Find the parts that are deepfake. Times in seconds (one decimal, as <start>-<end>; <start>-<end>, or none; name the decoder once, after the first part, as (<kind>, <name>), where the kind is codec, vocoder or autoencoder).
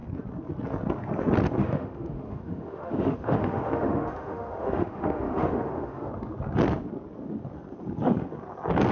1.6-6.1 (autoencoder, DAC-VAE)